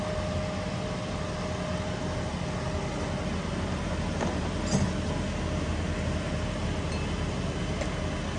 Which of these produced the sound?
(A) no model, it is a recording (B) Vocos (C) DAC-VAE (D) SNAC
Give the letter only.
A